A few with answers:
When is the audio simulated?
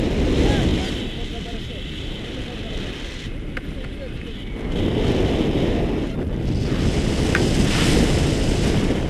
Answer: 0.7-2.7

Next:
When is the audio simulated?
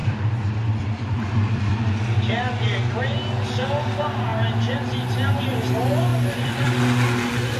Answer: 0.0-1.8; 6.1-6.8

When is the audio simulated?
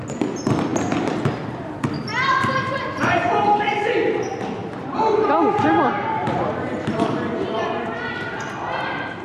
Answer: 0.7-3.9; 4.6-9.2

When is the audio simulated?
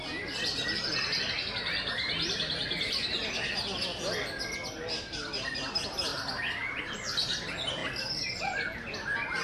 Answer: 6.1-6.8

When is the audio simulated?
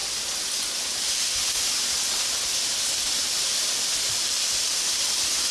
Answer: 3.4-4.9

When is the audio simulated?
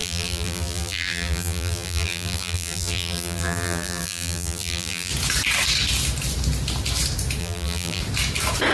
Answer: 0.0-5.1; 7.4-8.0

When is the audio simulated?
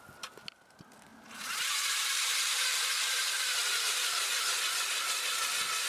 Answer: 1.1-4.6